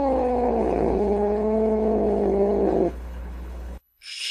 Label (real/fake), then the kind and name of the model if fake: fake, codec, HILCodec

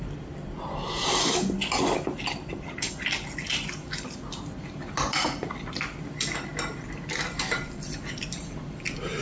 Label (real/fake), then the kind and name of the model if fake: real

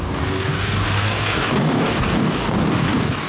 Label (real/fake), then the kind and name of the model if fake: fake, codec, DAC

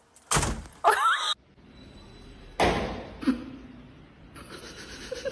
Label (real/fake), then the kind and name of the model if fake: real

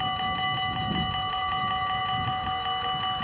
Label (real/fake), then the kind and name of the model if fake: real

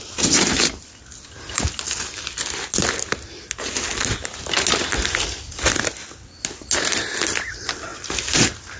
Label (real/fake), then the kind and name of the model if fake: real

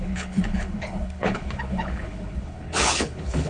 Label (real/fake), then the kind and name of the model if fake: fake, codec, HILCodec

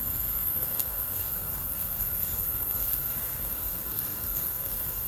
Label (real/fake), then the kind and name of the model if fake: fake, codec, SNAC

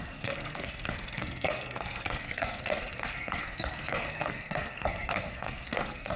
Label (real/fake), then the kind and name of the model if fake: fake, codec, SNAC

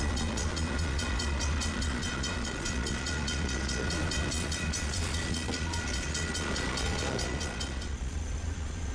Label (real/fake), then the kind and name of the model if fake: fake, vocoder, Vocos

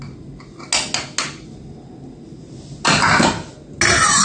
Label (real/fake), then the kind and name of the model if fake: real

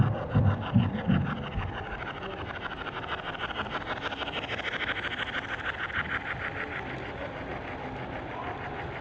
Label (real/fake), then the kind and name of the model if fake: real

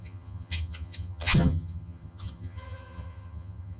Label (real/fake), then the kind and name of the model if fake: fake, vocoder, HiFi-GAN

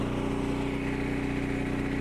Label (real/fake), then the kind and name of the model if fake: real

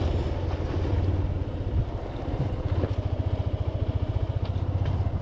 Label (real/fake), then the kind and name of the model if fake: real